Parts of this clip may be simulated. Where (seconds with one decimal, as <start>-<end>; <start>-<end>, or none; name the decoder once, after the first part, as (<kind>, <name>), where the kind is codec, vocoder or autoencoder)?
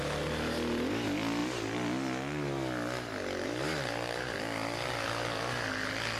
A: none